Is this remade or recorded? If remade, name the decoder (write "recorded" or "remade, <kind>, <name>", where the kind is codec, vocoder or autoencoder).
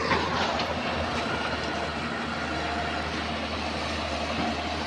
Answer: recorded